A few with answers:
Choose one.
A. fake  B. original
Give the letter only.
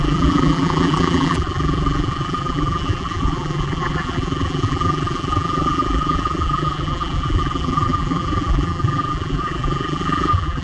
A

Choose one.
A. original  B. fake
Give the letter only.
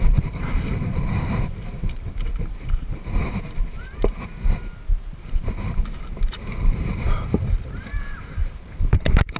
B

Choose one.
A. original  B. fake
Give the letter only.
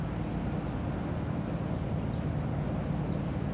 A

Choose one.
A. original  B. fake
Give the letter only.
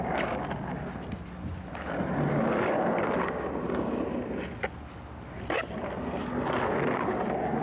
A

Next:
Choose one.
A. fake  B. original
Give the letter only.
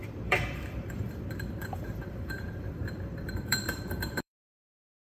A